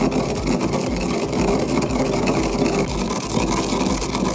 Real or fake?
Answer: real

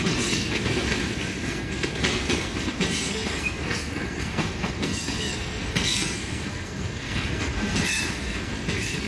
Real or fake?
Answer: fake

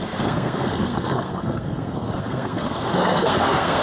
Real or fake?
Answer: fake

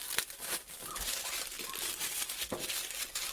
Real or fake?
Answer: real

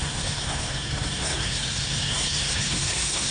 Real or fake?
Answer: fake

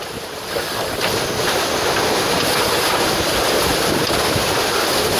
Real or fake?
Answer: real